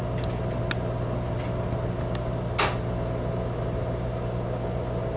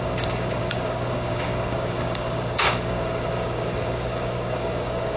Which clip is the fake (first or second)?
second